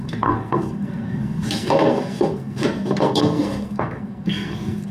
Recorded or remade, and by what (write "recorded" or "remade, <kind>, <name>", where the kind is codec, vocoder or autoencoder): remade, codec, SNAC